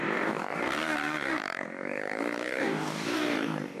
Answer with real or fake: fake